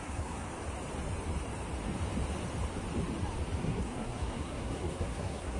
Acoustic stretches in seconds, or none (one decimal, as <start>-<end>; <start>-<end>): 0.5-3.6